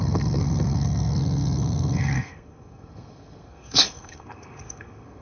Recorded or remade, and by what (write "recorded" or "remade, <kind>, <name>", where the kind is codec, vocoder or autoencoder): remade, codec, SNAC